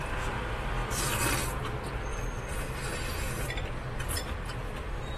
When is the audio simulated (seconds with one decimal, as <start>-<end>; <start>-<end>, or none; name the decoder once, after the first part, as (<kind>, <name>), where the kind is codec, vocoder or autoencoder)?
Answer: none